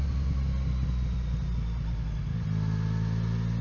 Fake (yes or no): no